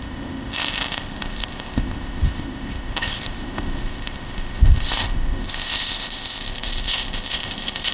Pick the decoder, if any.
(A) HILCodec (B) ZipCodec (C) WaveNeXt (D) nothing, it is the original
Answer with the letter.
B